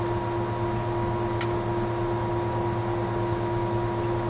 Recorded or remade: recorded